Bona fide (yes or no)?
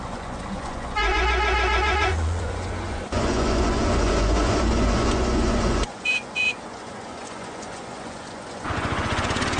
no